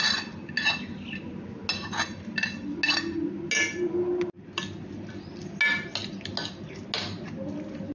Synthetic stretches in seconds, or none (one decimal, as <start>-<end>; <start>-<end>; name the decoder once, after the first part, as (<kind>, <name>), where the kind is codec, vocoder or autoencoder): none